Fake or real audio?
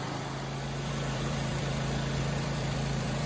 fake